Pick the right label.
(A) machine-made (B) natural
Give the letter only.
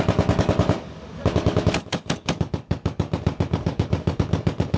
A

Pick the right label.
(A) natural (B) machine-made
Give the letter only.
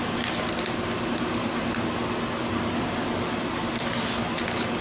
A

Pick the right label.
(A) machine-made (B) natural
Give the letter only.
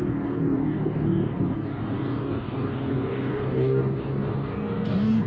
A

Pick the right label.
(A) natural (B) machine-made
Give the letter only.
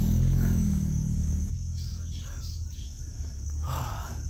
B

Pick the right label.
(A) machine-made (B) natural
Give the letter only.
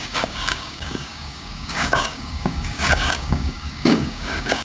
A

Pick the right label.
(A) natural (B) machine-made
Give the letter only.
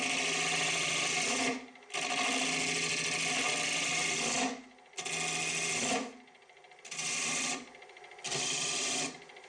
A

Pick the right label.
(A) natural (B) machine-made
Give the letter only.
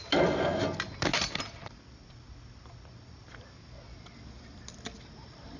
A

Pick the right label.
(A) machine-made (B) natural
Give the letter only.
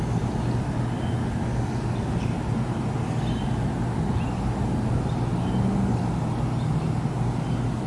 B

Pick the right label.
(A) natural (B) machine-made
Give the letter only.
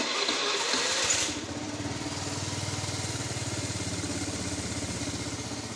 A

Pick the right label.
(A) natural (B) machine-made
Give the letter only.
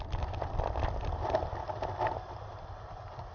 A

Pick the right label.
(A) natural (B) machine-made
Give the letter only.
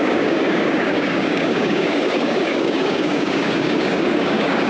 B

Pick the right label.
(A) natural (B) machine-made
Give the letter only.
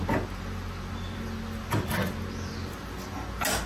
A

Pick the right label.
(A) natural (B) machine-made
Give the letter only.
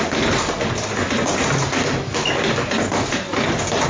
A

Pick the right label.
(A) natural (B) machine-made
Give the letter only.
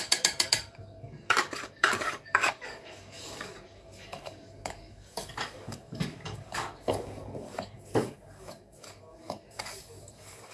B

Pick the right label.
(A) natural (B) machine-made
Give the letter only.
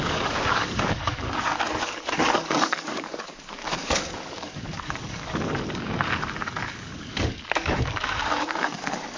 B